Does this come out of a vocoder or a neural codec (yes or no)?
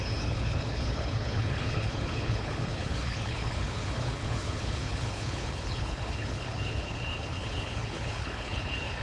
yes